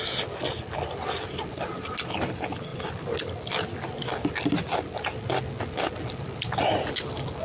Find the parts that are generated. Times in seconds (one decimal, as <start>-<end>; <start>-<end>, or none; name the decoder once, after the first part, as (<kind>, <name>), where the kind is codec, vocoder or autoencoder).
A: none

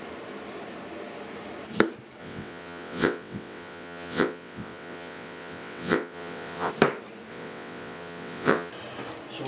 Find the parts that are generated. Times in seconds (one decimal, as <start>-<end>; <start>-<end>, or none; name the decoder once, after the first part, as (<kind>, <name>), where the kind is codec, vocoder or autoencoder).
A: 2.2-6.7 (vocoder, WaveNeXt); 7.3-8.7

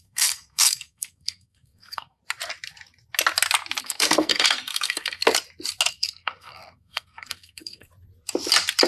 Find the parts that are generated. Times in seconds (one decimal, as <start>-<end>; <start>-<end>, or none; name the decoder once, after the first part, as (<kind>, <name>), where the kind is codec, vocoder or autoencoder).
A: 0.0-2.2 (codec, SNAC); 3.8-5.2; 5.9-7.9